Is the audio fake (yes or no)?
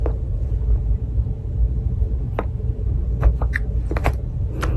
no